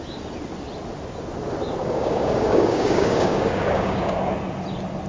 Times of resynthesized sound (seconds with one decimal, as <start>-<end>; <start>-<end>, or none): 1.8-4.2